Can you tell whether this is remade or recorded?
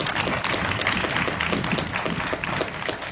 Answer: recorded